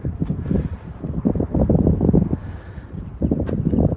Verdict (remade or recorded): remade